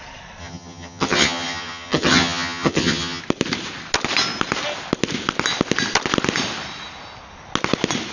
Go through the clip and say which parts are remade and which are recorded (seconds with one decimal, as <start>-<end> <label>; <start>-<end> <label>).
0.0-0.4 recorded; 0.4-3.2 remade; 3.2-8.1 recorded